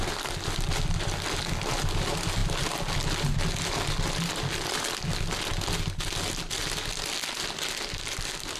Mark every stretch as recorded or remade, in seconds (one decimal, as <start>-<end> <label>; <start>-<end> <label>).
0.0-8.6 recorded